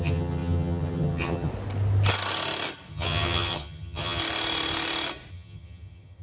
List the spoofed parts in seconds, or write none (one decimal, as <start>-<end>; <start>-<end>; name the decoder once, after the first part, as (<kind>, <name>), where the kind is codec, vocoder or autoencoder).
0.0-1.5 (vocoder, HiFi-GAN); 2.9-4.2; 5.3-6.2